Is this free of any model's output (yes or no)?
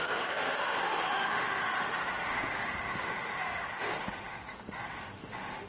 no